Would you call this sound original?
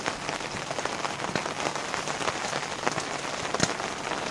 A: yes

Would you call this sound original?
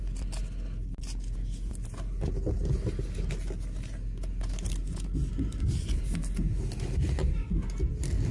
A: yes